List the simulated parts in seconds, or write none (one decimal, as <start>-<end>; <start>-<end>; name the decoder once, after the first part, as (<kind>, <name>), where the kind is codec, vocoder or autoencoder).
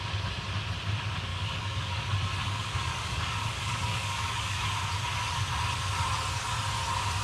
1.3-2.0 (codec, DAC); 2.4-4.6